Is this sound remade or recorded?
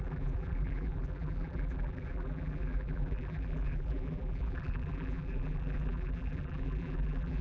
remade